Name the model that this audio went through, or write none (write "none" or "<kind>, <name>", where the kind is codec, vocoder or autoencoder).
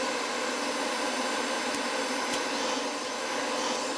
none